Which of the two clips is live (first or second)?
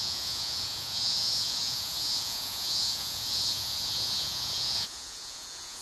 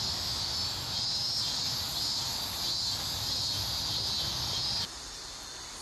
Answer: second